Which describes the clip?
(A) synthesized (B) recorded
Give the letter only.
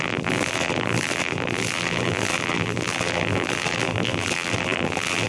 A